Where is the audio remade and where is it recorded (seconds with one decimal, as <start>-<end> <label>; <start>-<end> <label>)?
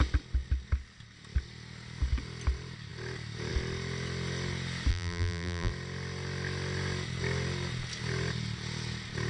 0.0-4.9 recorded; 4.9-5.7 remade; 5.7-9.3 recorded